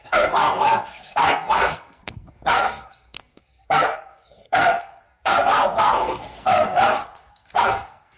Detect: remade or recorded remade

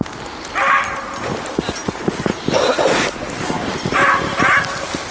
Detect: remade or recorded recorded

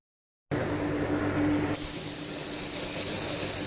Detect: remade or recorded recorded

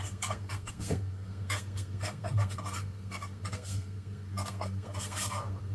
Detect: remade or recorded remade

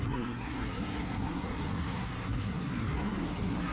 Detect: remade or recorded remade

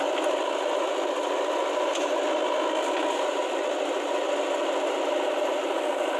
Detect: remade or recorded recorded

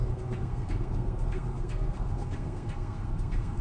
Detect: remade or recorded remade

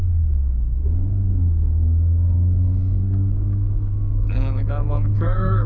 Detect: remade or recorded remade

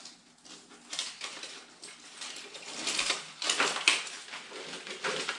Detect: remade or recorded recorded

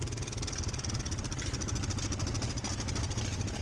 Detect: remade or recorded recorded